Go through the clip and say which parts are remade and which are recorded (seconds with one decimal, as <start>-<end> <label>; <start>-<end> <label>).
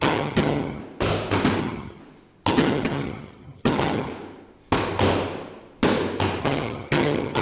0.0-0.8 remade; 0.8-1.6 recorded; 1.6-2.0 remade; 2.0-2.5 recorded; 2.5-4.1 remade; 4.1-6.4 recorded; 6.4-7.4 remade